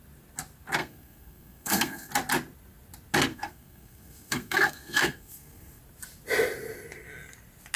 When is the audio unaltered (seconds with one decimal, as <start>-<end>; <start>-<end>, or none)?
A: 0.0-0.8; 2.1-3.3; 5.8-7.8